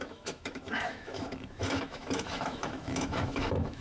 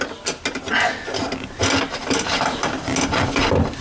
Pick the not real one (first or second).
first